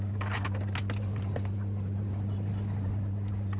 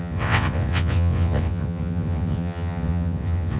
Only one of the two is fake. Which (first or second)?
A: second